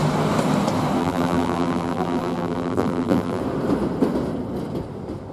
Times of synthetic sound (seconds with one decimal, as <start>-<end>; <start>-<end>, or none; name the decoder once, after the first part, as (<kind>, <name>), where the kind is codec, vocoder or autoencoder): 1.0-3.4 (vocoder, BigVGAN v2)